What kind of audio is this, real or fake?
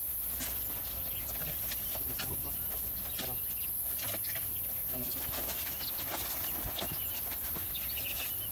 real